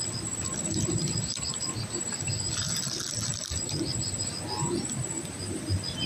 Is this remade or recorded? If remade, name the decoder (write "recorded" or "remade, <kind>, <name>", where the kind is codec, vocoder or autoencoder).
recorded